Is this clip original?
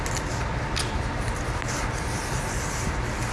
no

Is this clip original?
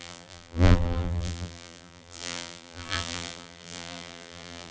no